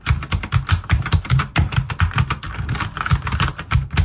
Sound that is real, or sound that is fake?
real